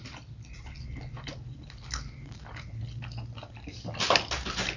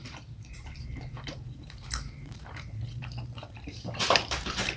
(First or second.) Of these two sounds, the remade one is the second